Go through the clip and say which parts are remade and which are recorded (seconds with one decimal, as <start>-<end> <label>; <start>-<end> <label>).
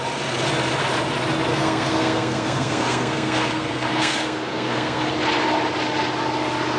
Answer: 0.0-1.5 recorded; 1.5-5.1 remade; 5.1-6.8 recorded